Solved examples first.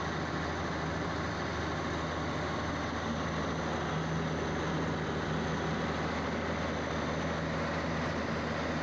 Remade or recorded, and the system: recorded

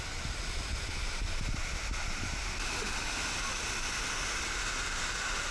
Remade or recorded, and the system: recorded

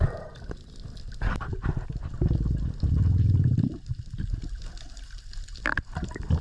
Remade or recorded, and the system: recorded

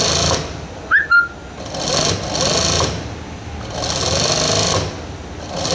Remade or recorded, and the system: recorded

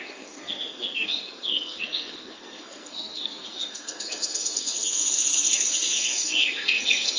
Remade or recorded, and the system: remade, codec, SNAC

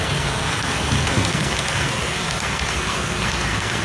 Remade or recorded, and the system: remade, codec, SNAC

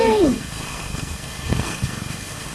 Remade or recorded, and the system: remade, codec, SNAC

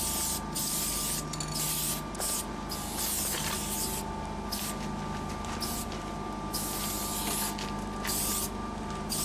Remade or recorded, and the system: recorded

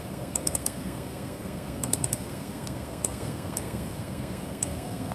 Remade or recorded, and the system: remade, codec, SNAC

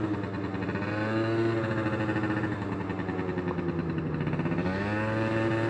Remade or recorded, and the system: recorded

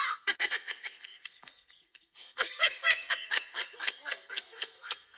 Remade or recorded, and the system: remade, codec, SNAC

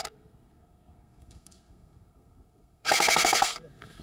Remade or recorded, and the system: remade, codec, SNAC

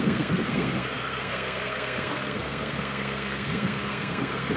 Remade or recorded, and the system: remade, codec, SNAC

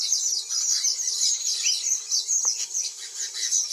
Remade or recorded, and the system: recorded